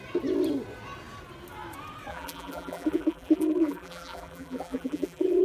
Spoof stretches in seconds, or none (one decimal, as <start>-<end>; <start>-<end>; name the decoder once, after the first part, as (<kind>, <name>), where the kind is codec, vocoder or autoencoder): 2.1-5.4 (vocoder, BigVGAN v2)